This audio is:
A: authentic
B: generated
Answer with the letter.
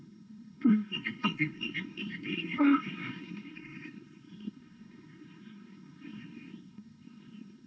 B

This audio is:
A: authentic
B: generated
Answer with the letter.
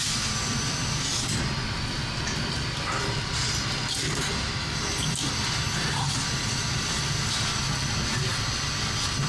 A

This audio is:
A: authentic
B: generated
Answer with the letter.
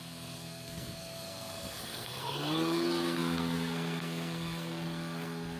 B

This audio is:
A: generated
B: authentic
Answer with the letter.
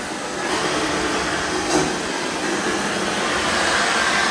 B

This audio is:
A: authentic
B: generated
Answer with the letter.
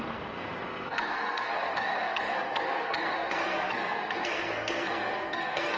B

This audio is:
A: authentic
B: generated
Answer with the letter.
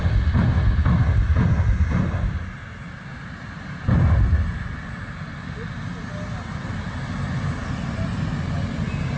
A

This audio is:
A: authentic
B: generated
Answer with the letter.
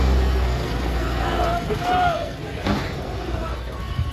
B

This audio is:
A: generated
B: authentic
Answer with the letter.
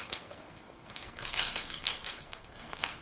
A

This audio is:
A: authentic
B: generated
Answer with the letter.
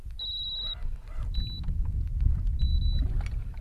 A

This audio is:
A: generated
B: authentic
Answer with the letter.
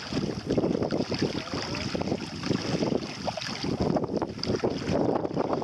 B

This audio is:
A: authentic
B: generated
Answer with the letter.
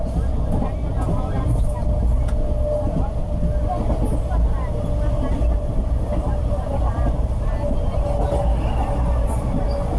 A